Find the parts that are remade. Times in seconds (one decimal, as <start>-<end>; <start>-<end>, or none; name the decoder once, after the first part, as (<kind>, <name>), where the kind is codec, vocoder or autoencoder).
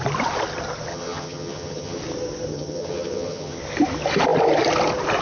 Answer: 0.9-2.0 (vocoder, HiFi-GAN); 2.5-3.6